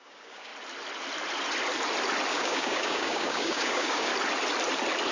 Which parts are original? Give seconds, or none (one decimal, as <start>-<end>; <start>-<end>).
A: 0.5-2.3; 4.1-5.1